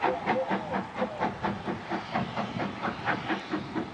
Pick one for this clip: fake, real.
real